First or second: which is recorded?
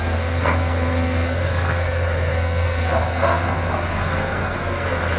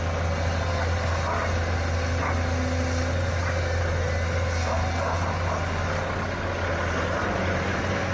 second